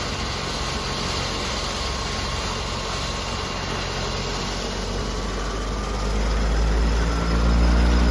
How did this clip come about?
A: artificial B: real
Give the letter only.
B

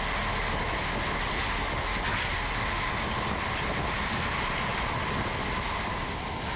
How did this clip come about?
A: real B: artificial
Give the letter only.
A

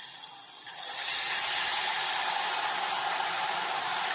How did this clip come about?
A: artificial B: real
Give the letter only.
B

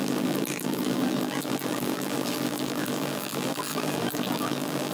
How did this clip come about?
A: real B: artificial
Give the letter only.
B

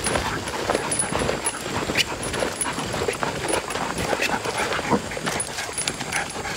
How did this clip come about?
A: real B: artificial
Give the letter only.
A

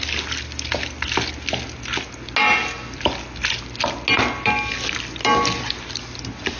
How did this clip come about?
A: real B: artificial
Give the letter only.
A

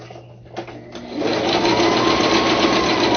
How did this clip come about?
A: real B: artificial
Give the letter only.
A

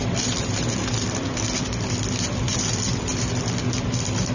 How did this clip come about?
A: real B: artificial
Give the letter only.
B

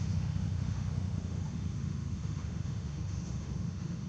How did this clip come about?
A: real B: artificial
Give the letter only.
B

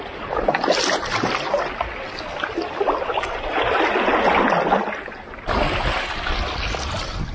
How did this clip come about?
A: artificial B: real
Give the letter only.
B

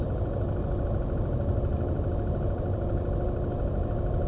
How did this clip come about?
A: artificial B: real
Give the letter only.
B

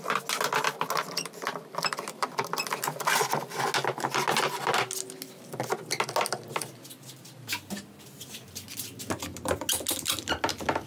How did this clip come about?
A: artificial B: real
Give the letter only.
B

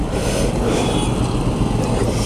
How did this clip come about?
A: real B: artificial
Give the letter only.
A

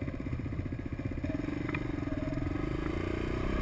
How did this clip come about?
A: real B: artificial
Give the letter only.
A